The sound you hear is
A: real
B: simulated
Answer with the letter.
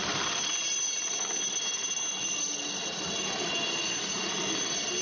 A